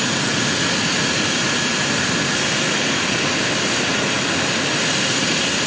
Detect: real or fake real